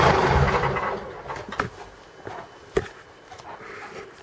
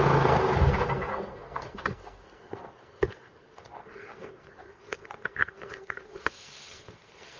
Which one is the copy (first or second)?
second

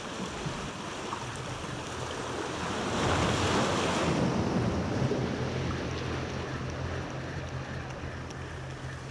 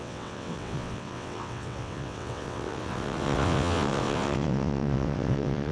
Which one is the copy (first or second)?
second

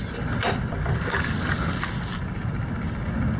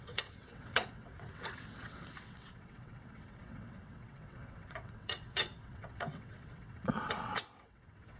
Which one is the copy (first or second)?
second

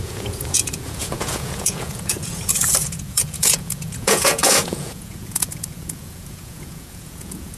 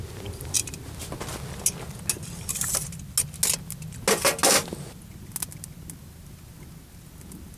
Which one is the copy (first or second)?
first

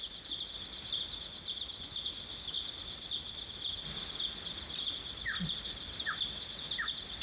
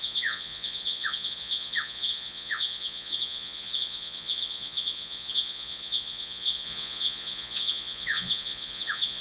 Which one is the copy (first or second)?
second